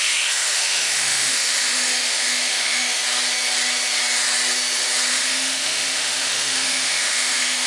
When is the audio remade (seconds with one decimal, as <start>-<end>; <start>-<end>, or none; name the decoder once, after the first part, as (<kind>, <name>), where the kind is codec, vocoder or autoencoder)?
0.0-3.0 (autoencoder, DAC-VAE); 5.1-7.7